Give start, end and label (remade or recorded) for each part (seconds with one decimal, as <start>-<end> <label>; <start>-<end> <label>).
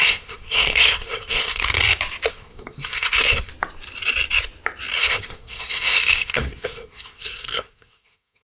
0.0-1.7 remade; 1.7-2.3 recorded; 2.3-3.5 remade; 3.5-5.0 recorded; 5.0-8.5 remade